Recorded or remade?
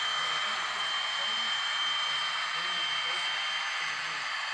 recorded